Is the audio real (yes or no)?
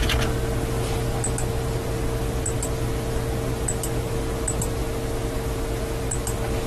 yes